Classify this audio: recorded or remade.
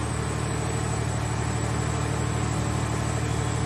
recorded